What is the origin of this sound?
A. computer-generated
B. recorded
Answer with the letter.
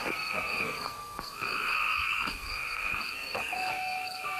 A